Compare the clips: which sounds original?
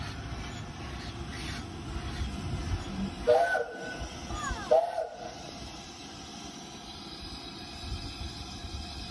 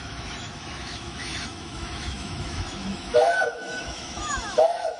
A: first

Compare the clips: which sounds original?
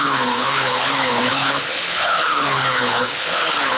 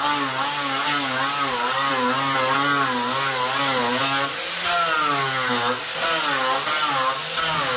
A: second